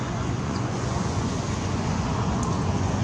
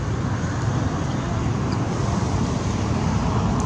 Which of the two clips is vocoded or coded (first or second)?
first